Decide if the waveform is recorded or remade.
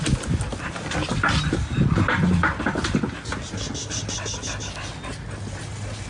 recorded